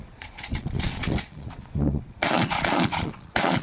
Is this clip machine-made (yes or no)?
yes